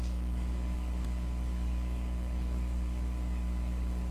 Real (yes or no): no